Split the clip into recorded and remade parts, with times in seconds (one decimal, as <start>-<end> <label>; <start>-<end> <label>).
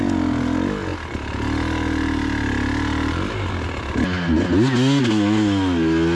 0.0-6.1 recorded